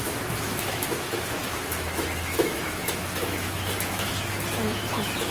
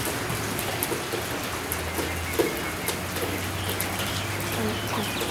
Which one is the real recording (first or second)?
second